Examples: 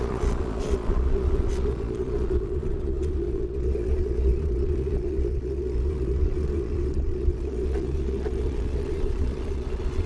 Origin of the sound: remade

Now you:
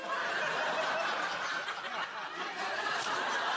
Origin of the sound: recorded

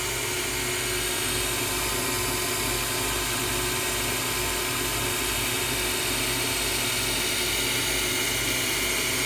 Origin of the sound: recorded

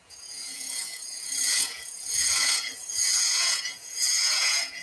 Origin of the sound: remade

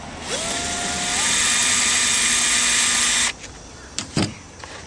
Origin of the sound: recorded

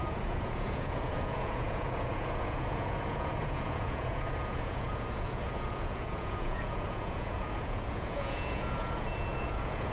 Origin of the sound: remade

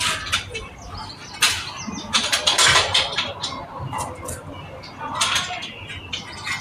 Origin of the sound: recorded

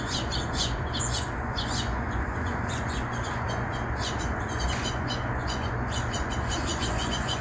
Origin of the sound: remade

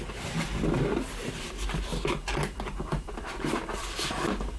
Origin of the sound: recorded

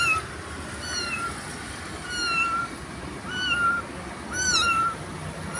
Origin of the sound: recorded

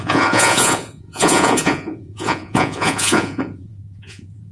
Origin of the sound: remade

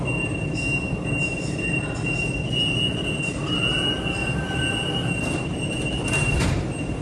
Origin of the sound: recorded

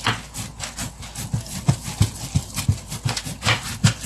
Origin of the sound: recorded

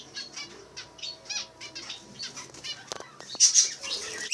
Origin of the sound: recorded